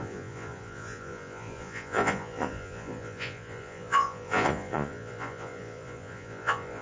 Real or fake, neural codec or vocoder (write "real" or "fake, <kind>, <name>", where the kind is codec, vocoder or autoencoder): fake, vocoder, Vocos